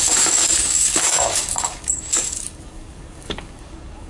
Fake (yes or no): yes